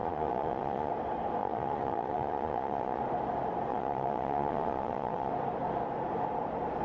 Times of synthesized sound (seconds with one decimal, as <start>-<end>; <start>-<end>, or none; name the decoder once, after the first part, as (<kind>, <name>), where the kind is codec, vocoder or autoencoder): 0.0-0.9 (vocoder, Vocos); 1.4-3.0; 3.7-5.3